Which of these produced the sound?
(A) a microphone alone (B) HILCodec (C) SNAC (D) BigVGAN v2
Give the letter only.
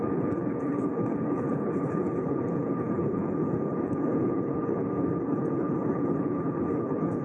B